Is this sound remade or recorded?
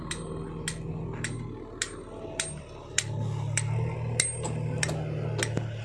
recorded